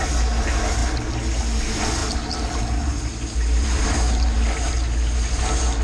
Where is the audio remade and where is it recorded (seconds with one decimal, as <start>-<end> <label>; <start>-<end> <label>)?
0.0-5.8 recorded